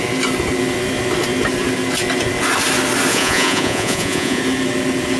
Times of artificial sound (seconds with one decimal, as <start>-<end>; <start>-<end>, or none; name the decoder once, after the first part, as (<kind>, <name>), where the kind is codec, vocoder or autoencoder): 3.1-4.4 (vocoder, Vocos)